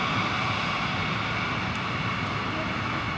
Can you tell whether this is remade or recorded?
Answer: recorded